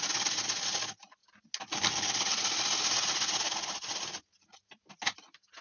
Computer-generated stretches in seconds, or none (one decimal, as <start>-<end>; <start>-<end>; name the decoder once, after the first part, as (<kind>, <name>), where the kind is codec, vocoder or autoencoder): none